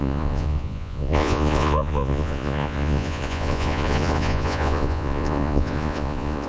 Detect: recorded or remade remade